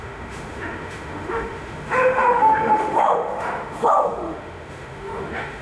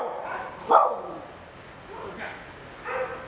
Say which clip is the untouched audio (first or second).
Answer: second